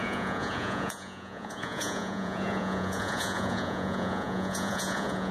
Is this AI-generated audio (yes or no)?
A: yes